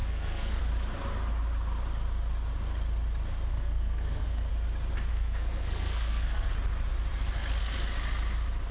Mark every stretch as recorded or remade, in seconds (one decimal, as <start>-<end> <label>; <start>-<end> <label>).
0.0-0.6 remade; 0.6-3.5 recorded; 3.5-4.5 remade; 4.5-5.1 recorded; 5.1-6.5 remade; 6.5-8.7 recorded

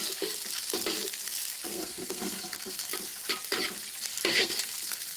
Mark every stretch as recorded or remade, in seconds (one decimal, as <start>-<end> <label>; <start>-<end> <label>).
0.0-1.7 recorded; 1.7-2.9 remade; 2.9-4.2 recorded; 4.2-5.2 remade

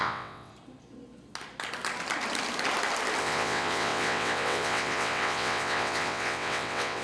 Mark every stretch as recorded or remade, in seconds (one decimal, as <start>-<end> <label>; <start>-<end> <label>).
0.0-0.5 remade; 0.5-3.2 recorded; 3.2-7.0 remade

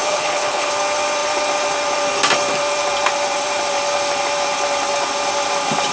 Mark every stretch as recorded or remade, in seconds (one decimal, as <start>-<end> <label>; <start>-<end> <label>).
0.0-0.7 remade; 0.7-5.9 recorded